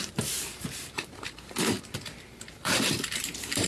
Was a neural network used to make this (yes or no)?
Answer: yes